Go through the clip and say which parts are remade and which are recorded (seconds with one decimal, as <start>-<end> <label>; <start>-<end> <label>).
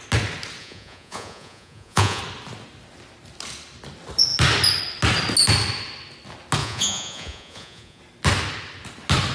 0.0-0.6 recorded; 0.6-2.2 remade; 2.2-6.6 recorded; 6.6-8.0 remade; 8.0-9.3 recorded